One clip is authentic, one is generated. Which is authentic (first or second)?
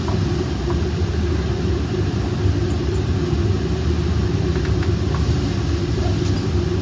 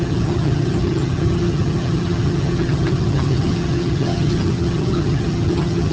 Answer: first